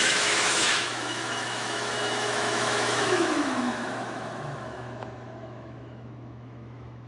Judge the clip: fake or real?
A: fake